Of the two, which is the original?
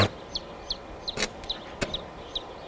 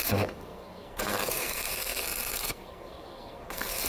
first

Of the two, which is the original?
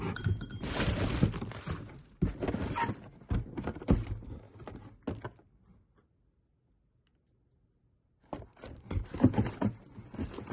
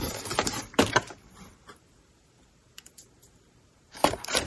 first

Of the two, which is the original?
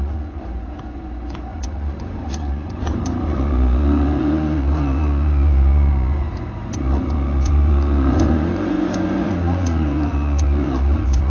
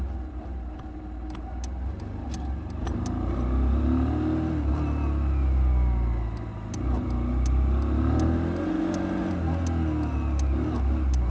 second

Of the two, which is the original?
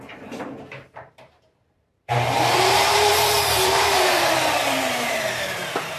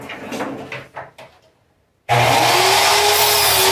second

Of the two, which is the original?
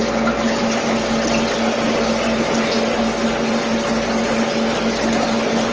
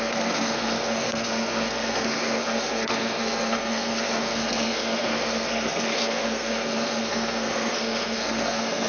first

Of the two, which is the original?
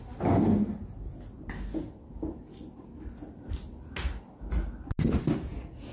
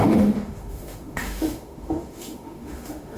first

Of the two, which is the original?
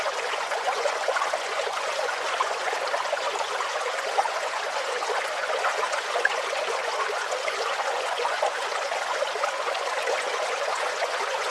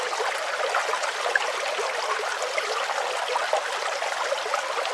second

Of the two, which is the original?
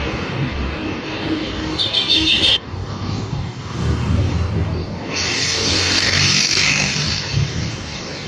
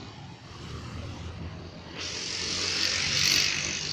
second